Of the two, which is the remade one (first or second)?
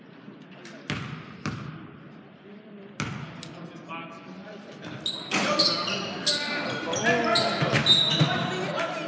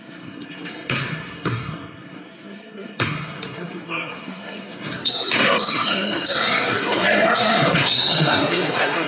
second